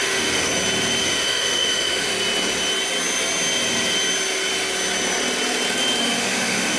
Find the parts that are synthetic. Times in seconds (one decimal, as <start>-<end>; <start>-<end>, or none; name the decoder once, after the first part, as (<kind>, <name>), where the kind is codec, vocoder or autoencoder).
0.0-0.5 (autoencoder, DAC-VAE); 1.0-2.1; 6.0-6.8